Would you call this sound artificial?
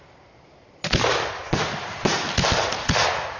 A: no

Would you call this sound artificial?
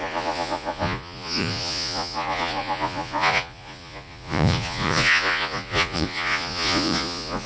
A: yes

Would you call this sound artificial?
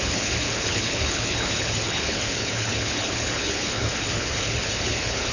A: yes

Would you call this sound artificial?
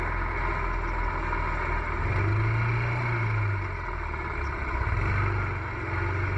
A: no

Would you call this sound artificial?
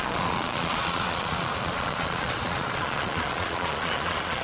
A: yes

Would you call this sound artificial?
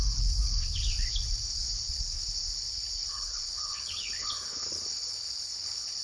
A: yes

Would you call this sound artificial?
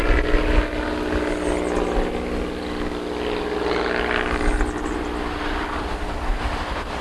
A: no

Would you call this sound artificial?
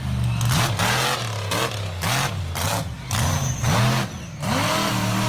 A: no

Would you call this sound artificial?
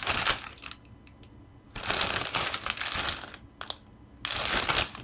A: no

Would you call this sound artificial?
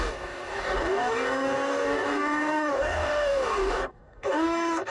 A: yes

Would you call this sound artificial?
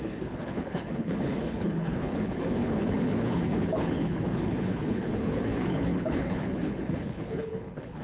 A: yes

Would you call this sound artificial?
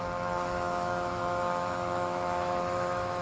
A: yes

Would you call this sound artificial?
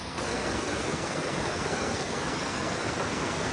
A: yes